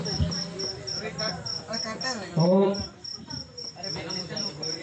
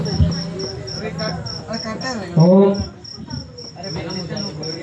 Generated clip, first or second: first